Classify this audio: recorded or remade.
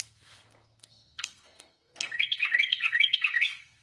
remade